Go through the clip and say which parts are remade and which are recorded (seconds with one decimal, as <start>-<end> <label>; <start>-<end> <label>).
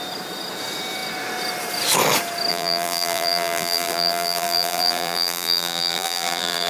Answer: 0.0-2.5 recorded; 2.5-6.7 remade